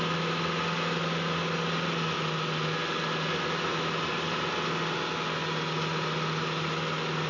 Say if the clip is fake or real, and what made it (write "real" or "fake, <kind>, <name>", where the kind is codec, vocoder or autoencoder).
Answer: real